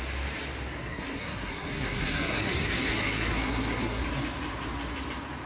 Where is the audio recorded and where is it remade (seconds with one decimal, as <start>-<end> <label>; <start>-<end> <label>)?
0.0-0.9 recorded; 0.9-4.0 remade; 4.0-5.5 recorded